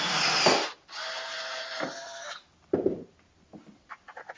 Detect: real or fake real